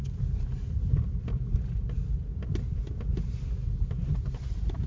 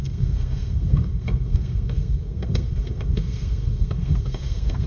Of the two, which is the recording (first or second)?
first